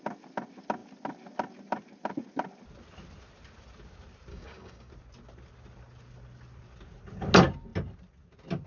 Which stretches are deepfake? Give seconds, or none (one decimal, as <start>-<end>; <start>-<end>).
4.3-4.9